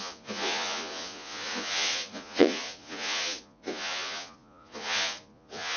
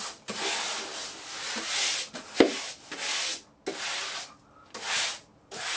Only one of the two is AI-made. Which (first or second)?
first